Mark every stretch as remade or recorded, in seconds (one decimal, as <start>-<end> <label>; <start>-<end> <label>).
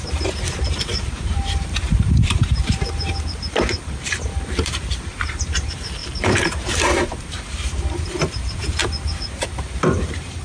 0.0-10.4 remade